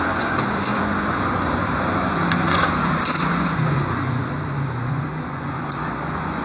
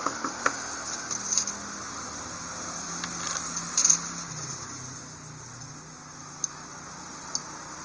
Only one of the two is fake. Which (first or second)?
first